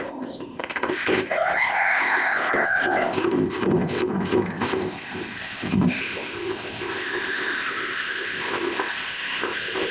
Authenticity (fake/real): fake